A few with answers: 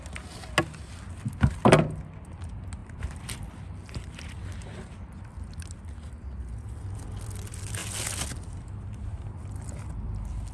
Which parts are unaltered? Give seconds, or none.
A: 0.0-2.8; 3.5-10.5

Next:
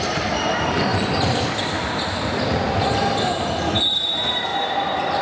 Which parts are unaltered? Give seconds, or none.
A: 0.0-0.9; 3.9-4.5

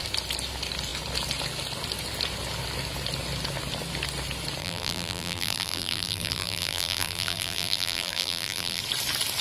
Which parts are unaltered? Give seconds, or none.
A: 0.0-4.6; 8.8-9.4

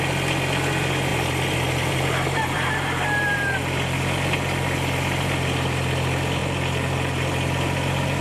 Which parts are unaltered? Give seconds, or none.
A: 0.0-1.1; 3.6-8.2

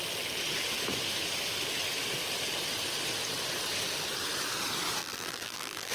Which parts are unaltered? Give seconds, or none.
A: 0.0-5.0

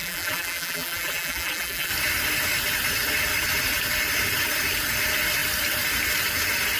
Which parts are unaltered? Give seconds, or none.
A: 1.9-6.8

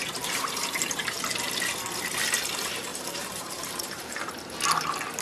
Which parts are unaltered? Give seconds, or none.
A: 1.5-2.9; 4.3-5.2

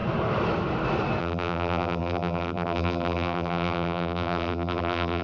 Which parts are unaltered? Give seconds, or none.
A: 0.0-1.2